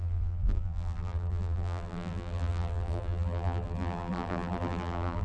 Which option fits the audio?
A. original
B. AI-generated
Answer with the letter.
B